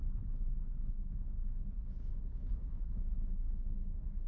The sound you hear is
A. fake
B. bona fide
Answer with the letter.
A